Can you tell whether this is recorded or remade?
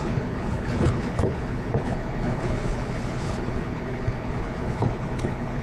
remade